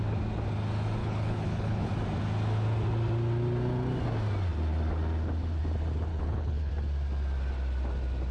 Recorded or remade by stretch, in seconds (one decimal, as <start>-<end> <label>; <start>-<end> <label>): 0.0-1.0 recorded; 1.0-1.9 remade; 1.9-6.1 recorded; 6.1-6.7 remade; 6.7-8.3 recorded